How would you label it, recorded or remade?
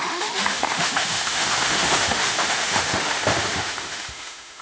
remade